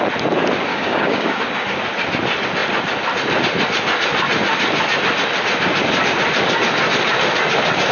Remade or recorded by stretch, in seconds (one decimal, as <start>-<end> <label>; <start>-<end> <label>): 0.0-0.7 recorded; 0.7-1.4 remade; 1.4-7.9 recorded

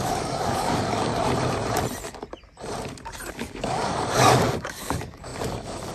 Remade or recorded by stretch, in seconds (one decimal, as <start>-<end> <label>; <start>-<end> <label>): 0.0-1.1 remade; 1.1-3.3 recorded; 3.3-5.9 remade

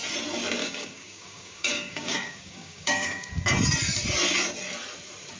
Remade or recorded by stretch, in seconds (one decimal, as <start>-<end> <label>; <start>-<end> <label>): 0.0-0.6 recorded; 0.6-3.3 remade; 3.3-5.4 recorded

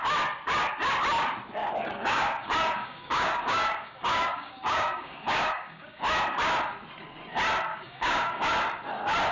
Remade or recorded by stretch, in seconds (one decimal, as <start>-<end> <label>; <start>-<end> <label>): 0.0-1.6 recorded; 1.6-6.0 remade; 6.0-7.7 recorded; 7.7-8.4 remade; 8.4-9.3 recorded